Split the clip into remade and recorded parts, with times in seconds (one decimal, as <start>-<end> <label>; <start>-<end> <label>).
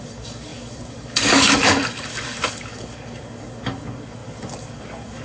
0.0-5.2 remade